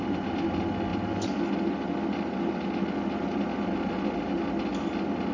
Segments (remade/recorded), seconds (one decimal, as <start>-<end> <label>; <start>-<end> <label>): 0.0-5.3 recorded